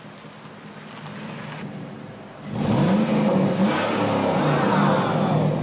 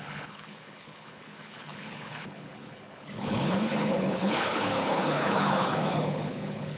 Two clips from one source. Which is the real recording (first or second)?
first